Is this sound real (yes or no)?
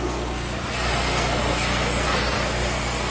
no